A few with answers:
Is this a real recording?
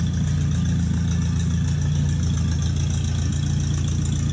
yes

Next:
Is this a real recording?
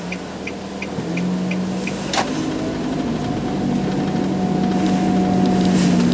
yes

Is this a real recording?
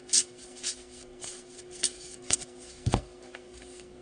no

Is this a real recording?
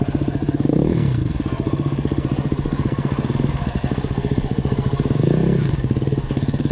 no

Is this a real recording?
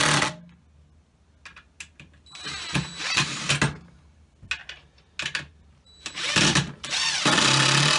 yes